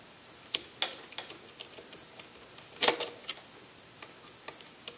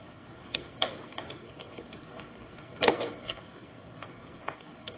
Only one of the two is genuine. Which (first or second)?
first